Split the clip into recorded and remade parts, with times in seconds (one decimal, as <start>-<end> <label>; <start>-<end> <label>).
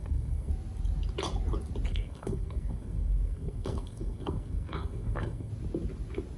0.0-0.5 remade; 0.5-1.9 recorded; 1.9-5.5 remade; 5.5-6.4 recorded